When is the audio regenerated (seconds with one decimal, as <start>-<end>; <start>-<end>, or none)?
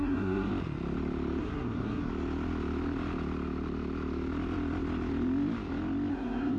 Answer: 0.0-0.5; 1.4-2.1; 6.1-6.6